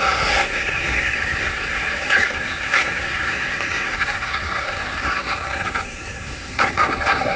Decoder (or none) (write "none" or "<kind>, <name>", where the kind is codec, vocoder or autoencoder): codec, SNAC